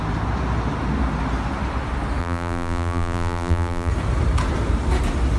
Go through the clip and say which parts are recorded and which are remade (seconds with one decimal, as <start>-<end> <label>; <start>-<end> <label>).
0.0-2.2 recorded; 2.2-3.9 remade; 3.9-5.4 recorded